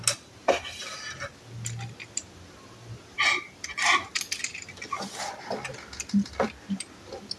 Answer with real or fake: real